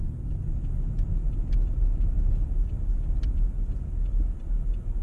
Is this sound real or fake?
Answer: real